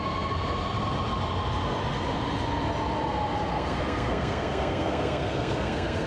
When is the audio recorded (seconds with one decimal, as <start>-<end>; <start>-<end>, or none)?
0.0-3.5